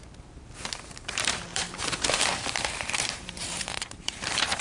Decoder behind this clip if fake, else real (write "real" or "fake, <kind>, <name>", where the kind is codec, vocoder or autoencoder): fake, vocoder, BigVGAN v2